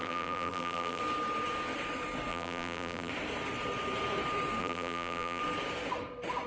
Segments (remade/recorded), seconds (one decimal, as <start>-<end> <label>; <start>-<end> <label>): 0.0-1.0 remade; 1.0-2.3 recorded; 2.3-3.1 remade; 3.1-4.6 recorded; 4.6-5.4 remade; 5.4-6.5 recorded